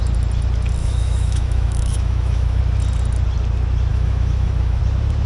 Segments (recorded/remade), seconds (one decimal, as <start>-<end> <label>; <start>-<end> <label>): 0.0-0.8 recorded; 0.8-2.6 remade; 2.6-3.9 recorded; 3.9-4.8 remade; 4.8-5.3 recorded

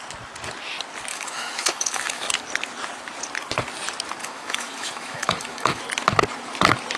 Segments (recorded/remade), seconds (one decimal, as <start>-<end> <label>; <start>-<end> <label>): 0.0-1.1 recorded; 1.1-2.3 remade; 2.3-4.2 recorded; 4.2-5.8 remade; 5.8-7.0 recorded

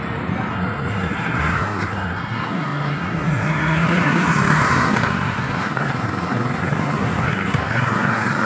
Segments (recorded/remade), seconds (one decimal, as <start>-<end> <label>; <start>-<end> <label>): 0.0-0.5 recorded; 0.5-8.5 remade